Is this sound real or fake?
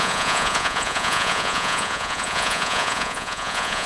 fake